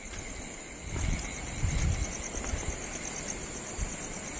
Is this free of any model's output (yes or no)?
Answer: yes